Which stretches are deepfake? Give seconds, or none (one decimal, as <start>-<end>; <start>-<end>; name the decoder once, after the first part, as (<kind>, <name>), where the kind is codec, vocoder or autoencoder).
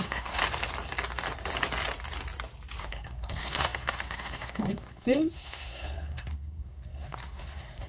0.0-0.4 (codec, SNAC); 2.8-7.9